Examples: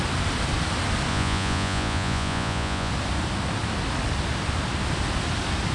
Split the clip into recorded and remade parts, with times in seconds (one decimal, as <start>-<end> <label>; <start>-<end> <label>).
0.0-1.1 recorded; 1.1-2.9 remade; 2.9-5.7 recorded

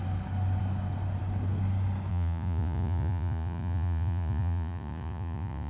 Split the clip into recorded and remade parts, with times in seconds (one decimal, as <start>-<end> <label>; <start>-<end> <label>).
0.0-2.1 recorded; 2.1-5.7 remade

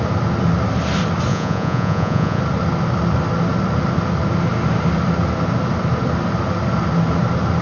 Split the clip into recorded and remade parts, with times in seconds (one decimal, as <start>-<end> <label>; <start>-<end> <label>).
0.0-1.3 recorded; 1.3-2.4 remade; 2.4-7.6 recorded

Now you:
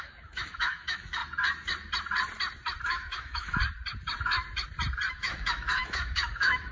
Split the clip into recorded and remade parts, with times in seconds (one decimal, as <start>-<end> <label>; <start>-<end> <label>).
0.0-1.2 remade; 1.2-2.9 recorded; 2.9-3.6 remade; 3.6-5.1 recorded; 5.1-6.7 remade

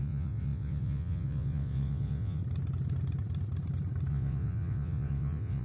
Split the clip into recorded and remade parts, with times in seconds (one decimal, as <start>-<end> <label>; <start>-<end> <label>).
0.0-2.4 remade; 2.4-4.1 recorded; 4.1-5.6 remade

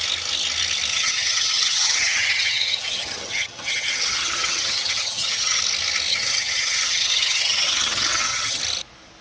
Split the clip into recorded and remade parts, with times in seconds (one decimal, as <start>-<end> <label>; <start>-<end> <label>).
0.0-0.9 recorded; 0.9-5.6 remade; 5.6-6.1 recorded; 6.1-8.6 remade; 8.6-9.2 recorded

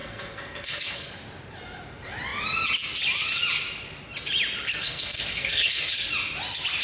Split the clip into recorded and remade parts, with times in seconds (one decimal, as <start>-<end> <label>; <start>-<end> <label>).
0.0-1.1 remade; 1.1-4.7 recorded; 4.7-5.9 remade; 5.9-6.8 recorded